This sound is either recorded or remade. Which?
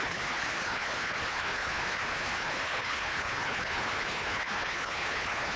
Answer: remade